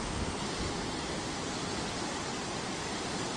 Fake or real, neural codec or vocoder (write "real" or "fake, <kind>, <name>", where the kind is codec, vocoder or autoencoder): real